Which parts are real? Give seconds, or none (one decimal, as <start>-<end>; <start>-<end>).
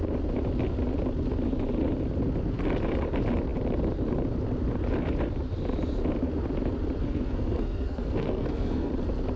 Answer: 0.0-7.0; 8.9-9.4